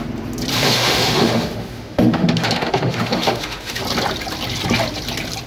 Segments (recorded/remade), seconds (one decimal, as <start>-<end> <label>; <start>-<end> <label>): 0.0-0.5 recorded; 0.5-3.8 remade; 3.8-5.5 recorded